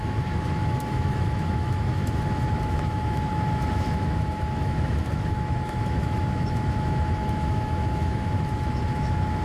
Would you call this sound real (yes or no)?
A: no